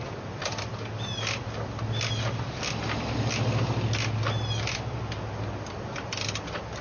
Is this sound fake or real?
real